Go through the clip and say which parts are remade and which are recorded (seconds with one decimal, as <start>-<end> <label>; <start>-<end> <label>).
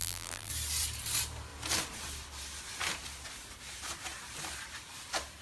0.0-0.5 remade; 0.5-5.4 recorded